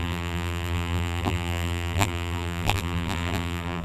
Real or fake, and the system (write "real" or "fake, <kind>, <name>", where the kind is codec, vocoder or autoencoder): fake, vocoder, BigVGAN v2